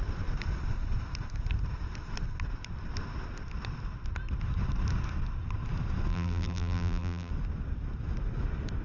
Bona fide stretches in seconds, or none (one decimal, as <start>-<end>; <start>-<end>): 0.0-6.1; 7.3-8.8